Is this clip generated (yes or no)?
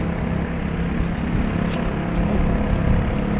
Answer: no